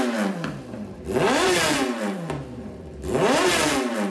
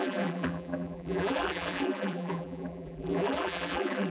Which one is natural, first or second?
first